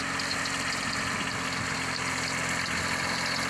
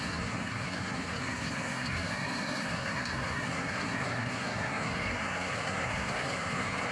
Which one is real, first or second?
first